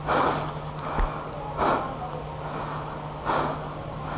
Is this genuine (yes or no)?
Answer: yes